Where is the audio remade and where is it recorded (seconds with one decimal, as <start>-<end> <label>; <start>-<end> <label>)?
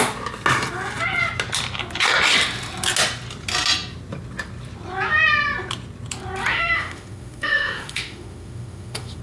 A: 0.0-6.5 recorded; 6.5-9.2 remade